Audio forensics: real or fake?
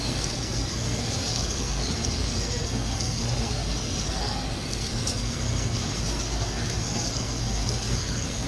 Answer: fake